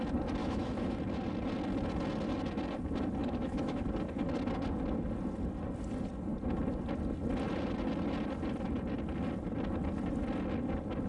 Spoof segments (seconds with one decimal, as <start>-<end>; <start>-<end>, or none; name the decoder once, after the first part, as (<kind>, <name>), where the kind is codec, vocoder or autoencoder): 0.4-1.0 (autoencoder, DAC-VAE); 3.2-3.8